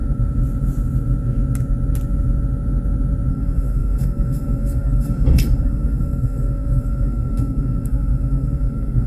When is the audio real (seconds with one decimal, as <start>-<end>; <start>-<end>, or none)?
0.0-3.3